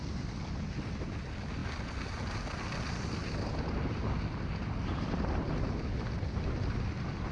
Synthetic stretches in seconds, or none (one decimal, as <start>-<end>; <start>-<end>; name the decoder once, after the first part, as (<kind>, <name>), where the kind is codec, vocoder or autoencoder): none